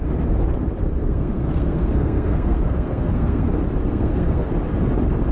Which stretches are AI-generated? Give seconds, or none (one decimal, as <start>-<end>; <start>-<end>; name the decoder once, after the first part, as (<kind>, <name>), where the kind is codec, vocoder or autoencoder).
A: 1.0-3.5 (codec, SNAC); 3.9-4.5